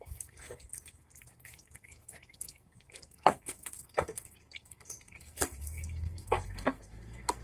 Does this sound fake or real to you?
fake